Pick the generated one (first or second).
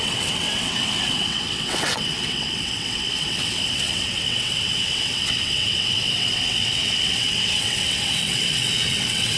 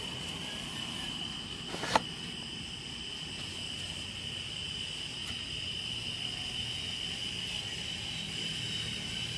first